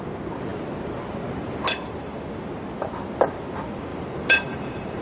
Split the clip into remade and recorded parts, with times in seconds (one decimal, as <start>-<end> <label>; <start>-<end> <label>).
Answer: 0.0-3.9 recorded; 3.9-5.0 remade